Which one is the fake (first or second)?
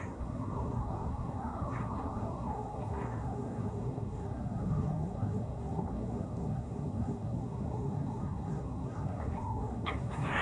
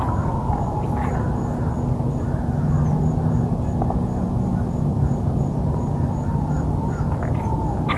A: first